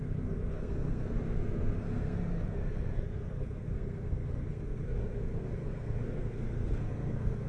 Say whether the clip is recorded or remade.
remade